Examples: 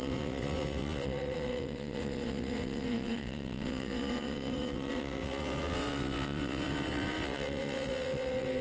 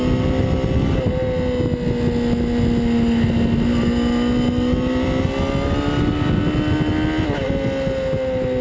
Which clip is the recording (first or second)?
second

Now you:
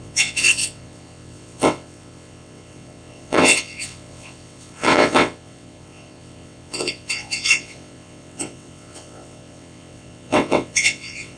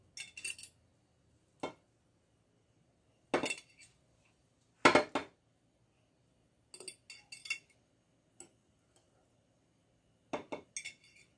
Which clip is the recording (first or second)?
second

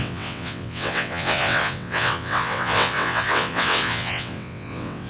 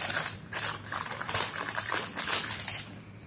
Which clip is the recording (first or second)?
second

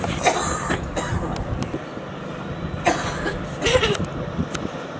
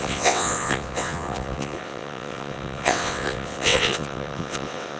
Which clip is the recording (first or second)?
first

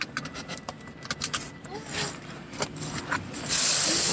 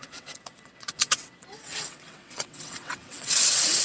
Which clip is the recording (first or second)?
first